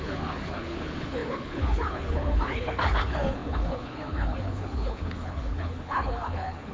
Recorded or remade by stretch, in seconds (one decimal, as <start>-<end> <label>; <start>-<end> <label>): 0.0-6.7 remade